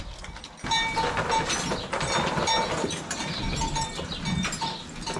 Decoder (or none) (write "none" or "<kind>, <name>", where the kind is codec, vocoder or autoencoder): none